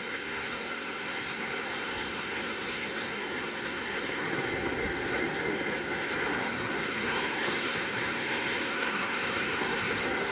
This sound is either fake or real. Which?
fake